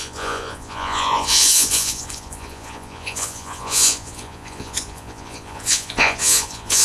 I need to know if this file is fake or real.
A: fake